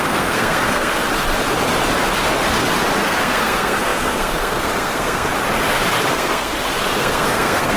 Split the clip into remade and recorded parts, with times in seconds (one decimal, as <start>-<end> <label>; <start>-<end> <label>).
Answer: 0.0-1.0 remade; 1.0-3.0 recorded; 3.0-5.3 remade; 5.3-6.1 recorded; 6.1-6.5 remade; 6.5-7.0 recorded; 7.0-7.8 remade